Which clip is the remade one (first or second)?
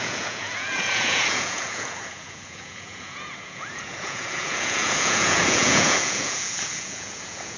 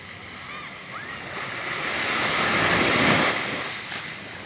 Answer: first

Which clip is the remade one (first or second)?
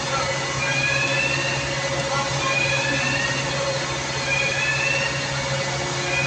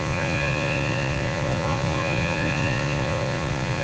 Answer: second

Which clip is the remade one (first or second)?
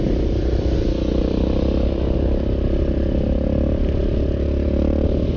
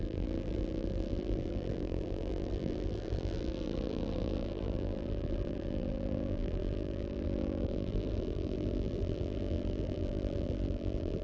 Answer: second